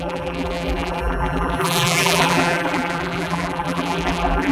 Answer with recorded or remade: remade